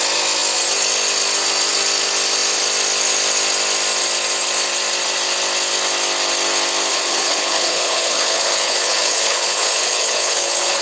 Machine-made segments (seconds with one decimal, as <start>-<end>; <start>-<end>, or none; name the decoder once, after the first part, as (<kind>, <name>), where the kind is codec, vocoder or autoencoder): 6.9-10.8 (codec, HILCodec)